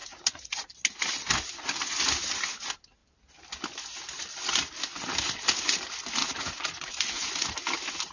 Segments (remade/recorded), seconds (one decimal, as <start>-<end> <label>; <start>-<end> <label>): 0.0-0.7 remade; 0.7-6.2 recorded; 6.2-7.5 remade; 7.5-8.1 recorded